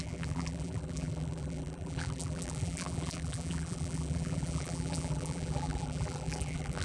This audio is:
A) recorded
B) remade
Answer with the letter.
B